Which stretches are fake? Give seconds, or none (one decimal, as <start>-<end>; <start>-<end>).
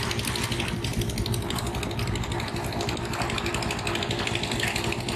none